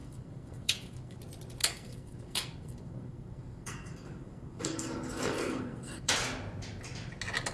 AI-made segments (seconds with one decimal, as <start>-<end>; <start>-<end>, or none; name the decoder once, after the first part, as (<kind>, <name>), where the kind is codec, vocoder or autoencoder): 0.0-1.2 (codec, SNAC); 1.6-6.1